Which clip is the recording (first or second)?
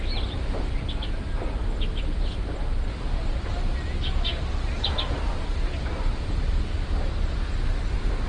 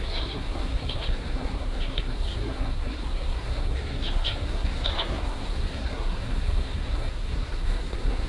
first